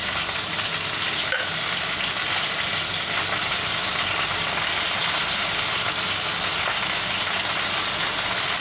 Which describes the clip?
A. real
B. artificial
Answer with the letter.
A